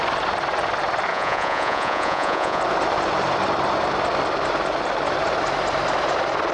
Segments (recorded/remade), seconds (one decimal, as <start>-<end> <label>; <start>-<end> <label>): 0.0-1.1 recorded; 1.1-2.6 remade; 2.6-6.5 recorded